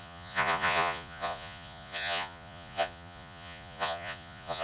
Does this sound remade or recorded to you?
remade